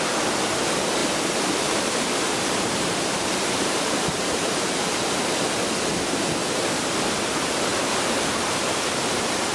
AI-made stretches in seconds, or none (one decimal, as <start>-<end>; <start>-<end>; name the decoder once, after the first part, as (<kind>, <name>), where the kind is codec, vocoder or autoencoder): 1.0-5.4 (vocoder, BigVGAN v2)